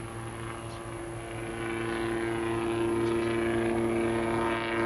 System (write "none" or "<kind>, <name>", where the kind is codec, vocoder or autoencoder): none